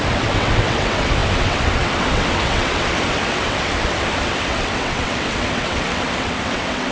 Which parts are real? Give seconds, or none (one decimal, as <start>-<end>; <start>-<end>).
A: none